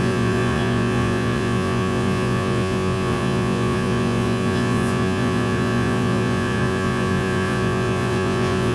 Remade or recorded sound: remade